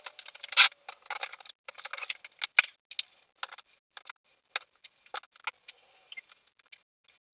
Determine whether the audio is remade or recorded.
recorded